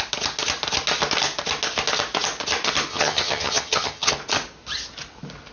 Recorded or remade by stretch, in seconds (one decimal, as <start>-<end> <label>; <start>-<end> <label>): 0.0-2.9 recorded; 2.9-4.1 remade; 4.1-5.5 recorded